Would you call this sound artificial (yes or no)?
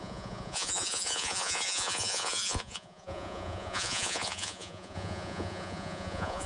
yes